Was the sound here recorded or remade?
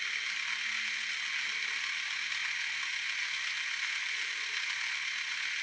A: recorded